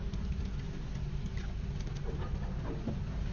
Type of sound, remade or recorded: recorded